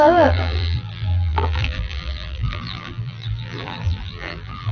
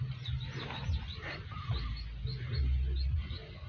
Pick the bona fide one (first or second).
second